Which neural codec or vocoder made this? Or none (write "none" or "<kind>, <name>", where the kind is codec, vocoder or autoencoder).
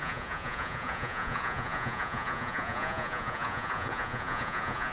vocoder, Vocos